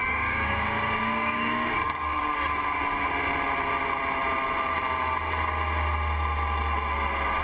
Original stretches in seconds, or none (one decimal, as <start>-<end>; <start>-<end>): 2.2-7.4